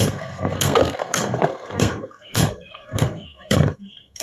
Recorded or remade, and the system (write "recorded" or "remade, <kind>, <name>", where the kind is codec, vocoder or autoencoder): remade, codec, SNAC